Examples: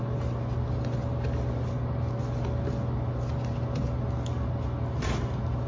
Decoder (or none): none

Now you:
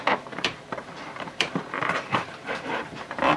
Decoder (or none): vocoder, BigVGAN v2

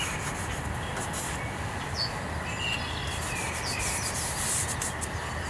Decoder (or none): none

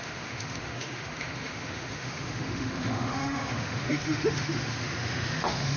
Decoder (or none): autoencoder, DAC-VAE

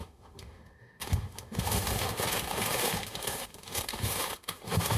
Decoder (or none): autoencoder, DAC-VAE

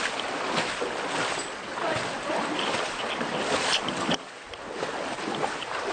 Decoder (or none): none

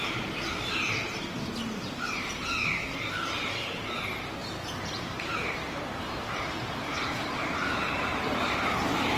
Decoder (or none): vocoder, BigVGAN v2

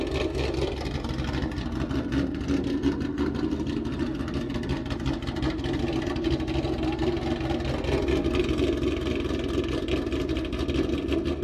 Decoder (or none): none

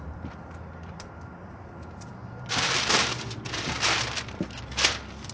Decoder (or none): vocoder, BigVGAN v2